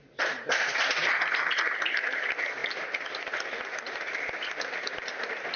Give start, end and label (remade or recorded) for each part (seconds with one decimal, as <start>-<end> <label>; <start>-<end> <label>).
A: 0.0-5.6 recorded